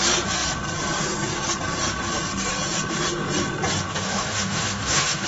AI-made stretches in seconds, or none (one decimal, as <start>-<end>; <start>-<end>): 3.9-5.3